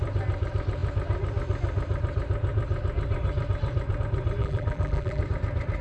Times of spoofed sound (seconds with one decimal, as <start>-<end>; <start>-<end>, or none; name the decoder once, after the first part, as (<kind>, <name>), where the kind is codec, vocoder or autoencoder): 4.4-5.2 (vocoder, BigVGAN v2)